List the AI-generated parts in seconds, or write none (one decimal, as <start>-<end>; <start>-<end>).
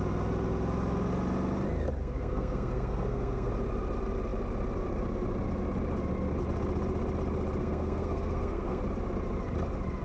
2.0-3.5; 7.6-8.8